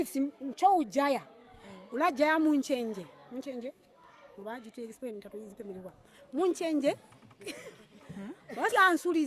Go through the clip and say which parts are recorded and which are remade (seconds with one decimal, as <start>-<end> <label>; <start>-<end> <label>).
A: 0.0-6.1 remade; 6.1-8.7 recorded; 8.7-9.3 remade